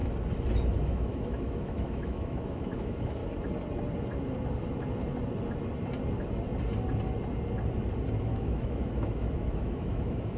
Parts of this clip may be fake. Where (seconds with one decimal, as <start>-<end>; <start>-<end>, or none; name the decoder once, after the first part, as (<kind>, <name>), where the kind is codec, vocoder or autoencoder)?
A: 0.8-3.2 (autoencoder, DAC-VAE); 8.2-10.4